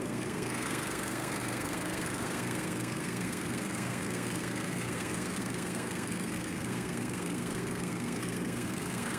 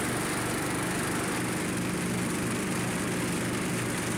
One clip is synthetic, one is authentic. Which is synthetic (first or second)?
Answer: first